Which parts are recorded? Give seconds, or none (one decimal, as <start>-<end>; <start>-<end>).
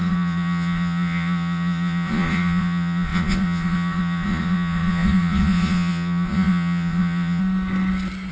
7.4-8.3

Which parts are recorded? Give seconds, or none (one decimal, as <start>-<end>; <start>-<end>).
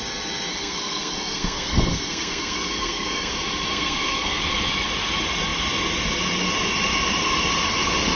0.0-0.5; 3.3-3.7; 4.4-8.2